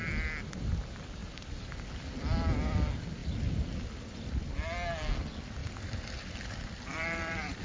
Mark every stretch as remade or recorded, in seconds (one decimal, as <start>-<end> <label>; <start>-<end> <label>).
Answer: 0.0-5.6 recorded; 5.6-7.6 remade